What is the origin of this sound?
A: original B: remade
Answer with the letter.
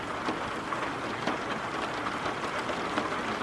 A